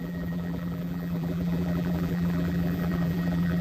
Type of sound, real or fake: fake